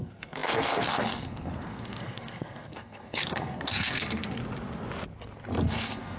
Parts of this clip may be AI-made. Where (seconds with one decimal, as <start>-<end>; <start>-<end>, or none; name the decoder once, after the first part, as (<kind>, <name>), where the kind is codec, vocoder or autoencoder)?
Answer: 0.0-4.4 (codec, SNAC); 5.7-6.2